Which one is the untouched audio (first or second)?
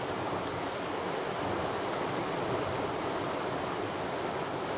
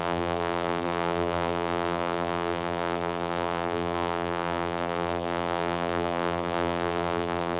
first